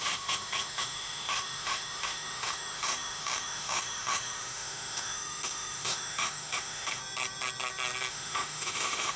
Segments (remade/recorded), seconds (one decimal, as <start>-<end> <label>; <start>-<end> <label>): 0.0-7.0 remade; 7.0-8.1 recorded; 8.1-9.2 remade